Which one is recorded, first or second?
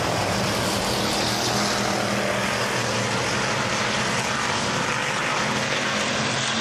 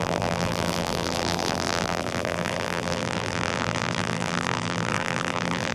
first